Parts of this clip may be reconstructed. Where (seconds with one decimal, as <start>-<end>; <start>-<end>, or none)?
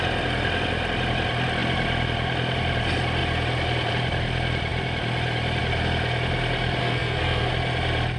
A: 6.8-7.5